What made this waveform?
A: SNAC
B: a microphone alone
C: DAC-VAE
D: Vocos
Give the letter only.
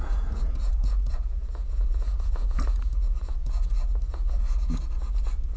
D